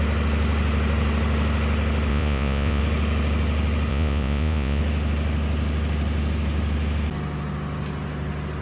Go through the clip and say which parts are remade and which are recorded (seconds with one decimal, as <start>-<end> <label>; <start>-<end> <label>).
0.0-2.1 recorded; 2.1-2.8 remade; 2.8-3.9 recorded; 3.9-4.8 remade; 4.8-8.6 recorded